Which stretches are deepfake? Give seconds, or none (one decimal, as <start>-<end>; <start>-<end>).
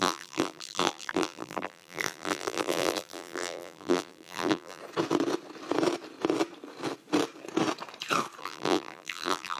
0.0-4.8; 8.4-9.6